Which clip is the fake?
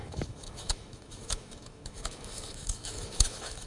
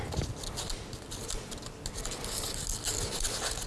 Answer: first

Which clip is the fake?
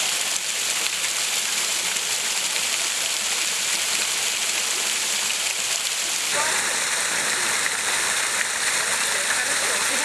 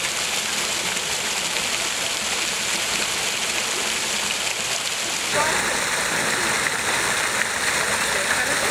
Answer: first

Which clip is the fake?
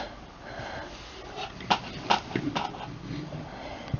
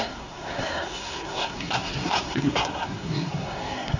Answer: second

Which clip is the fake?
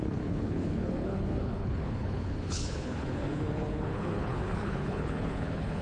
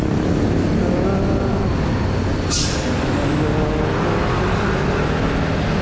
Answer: first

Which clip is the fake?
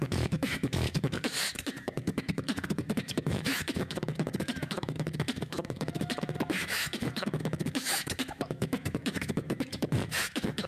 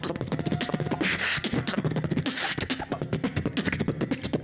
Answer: first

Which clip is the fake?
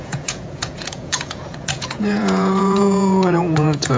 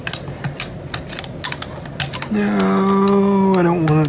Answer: first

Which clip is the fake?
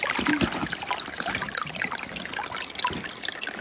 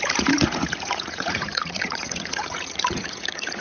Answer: second